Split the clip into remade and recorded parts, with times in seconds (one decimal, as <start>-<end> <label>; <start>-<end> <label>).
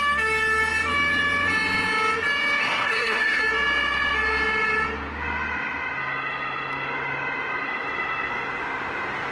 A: 0.0-2.6 recorded; 2.6-3.4 remade; 3.4-9.3 recorded